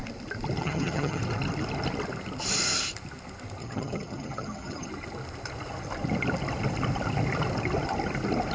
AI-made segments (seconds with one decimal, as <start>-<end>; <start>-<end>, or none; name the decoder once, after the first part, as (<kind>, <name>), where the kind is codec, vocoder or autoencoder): 0.6-1.2 (vocoder, HiFi-GAN); 3.6-4.9